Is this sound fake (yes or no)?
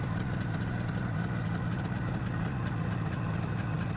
no